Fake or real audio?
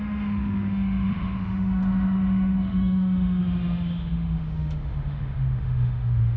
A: fake